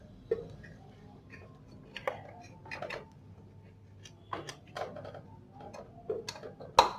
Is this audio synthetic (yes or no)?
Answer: no